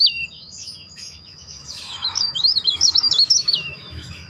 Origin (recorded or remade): remade